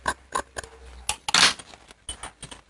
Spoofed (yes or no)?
no